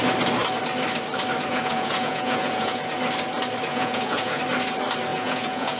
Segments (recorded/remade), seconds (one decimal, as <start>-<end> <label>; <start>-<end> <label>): 0.0-1.5 recorded; 1.5-2.9 remade; 2.9-3.7 recorded; 3.7-4.4 remade; 4.4-5.1 recorded; 5.1-5.8 remade